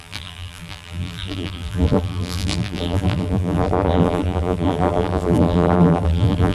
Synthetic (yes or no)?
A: yes